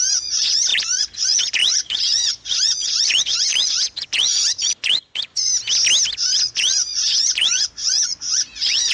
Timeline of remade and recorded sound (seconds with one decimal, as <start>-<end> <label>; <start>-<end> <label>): 0.0-5.5 remade; 5.5-6.2 recorded; 6.2-8.9 remade